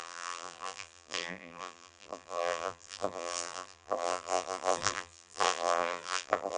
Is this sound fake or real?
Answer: fake